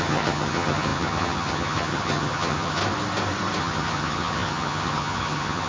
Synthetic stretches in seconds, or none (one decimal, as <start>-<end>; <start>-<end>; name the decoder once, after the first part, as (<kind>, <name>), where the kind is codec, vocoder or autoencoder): 0.0-2.8 (vocoder, HiFi-GAN); 3.6-5.7